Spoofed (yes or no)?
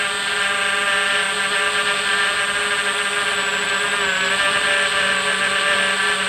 no